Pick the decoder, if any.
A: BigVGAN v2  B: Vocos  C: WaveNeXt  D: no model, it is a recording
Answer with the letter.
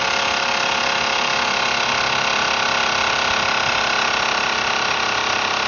D